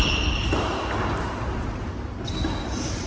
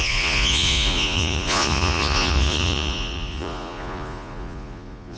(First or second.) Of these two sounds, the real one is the first